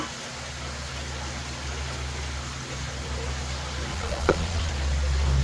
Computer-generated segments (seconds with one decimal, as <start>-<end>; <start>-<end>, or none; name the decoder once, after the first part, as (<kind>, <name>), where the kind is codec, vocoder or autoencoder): 3.9-4.7 (vocoder, Vocos)